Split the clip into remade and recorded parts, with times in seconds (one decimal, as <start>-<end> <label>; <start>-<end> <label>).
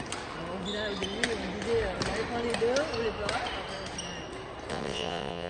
0.0-4.7 recorded; 4.7-5.5 remade